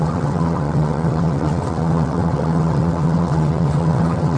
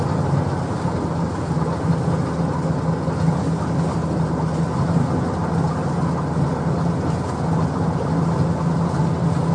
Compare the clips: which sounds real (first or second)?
second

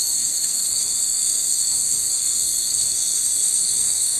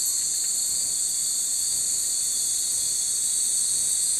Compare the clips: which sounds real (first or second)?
second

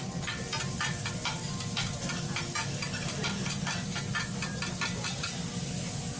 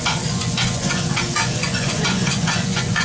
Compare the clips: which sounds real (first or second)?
first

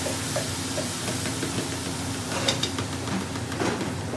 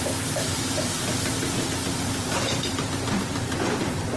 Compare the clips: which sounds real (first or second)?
first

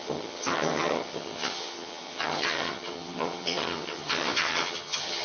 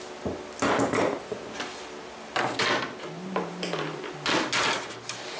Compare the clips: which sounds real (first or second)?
second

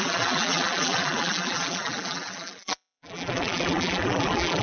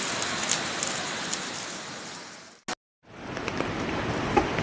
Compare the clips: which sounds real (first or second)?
second